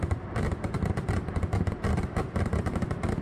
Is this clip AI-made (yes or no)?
no